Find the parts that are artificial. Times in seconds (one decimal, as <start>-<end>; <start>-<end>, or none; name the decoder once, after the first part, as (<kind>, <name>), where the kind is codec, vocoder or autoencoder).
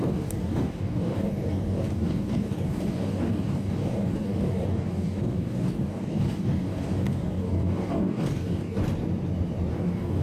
0.0-8.8 (codec, DAC); 9.7-10.2